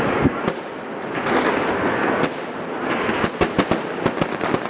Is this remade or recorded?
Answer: recorded